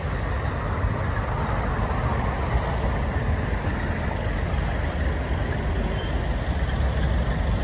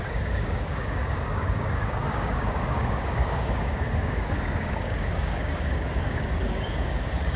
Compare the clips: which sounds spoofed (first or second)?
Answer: second